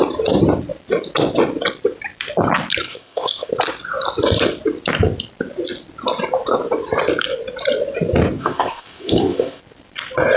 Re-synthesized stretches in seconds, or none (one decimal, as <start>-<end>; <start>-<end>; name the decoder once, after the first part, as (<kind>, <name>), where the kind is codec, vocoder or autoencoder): 2.9-3.5 (codec, ZipCodec); 8.4-9.6